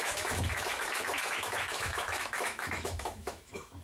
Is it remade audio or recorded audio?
remade